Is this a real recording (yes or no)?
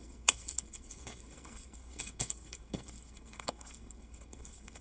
no